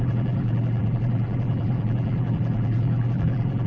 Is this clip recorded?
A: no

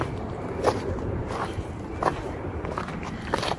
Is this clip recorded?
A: no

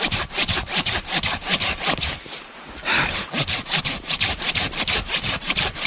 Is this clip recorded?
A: no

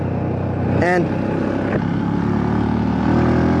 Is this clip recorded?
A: yes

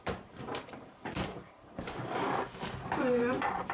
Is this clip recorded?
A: no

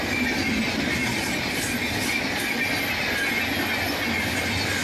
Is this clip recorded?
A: yes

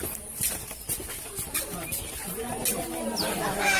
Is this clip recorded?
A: yes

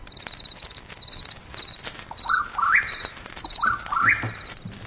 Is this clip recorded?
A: no